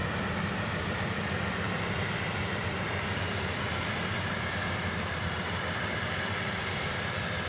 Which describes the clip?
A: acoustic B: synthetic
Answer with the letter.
B